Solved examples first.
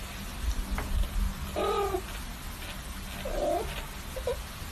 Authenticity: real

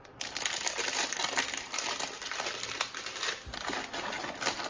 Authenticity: real